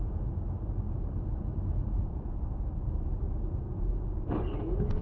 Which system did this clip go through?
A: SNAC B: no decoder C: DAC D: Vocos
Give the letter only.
B